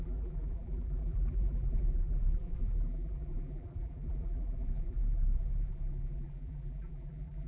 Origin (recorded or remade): remade